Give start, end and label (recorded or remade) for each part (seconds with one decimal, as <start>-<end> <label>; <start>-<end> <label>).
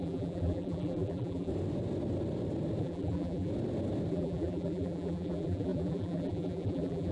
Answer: 0.0-1.5 remade; 1.5-2.8 recorded; 2.8-3.5 remade; 3.5-4.1 recorded; 4.1-7.1 remade